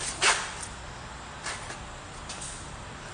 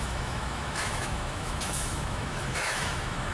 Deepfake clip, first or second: second